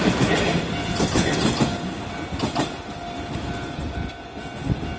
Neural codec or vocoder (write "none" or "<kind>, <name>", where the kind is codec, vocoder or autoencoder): none